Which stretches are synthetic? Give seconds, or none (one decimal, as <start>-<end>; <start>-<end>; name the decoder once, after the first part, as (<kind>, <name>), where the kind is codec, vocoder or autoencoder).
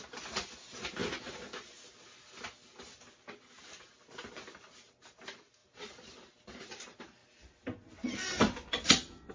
0.0-1.0 (vocoder, BigVGAN v2); 3.6-7.2